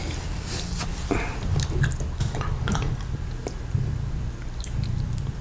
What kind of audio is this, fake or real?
real